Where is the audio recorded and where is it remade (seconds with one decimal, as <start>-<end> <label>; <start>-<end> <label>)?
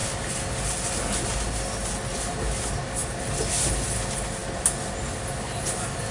0.0-6.1 recorded